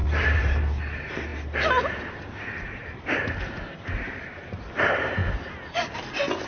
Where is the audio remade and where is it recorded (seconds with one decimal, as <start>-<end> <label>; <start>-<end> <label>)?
0.0-0.8 remade; 0.8-6.5 recorded